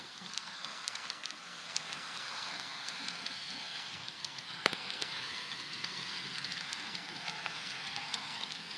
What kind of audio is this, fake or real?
fake